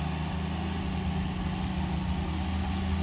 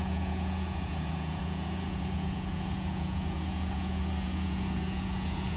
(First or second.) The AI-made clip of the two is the second